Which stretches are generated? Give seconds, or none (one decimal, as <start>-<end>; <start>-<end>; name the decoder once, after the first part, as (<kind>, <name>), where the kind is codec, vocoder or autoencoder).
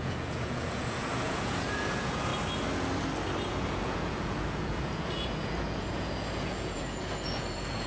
0.0-2.3 (vocoder, Vocos); 3.5-7.9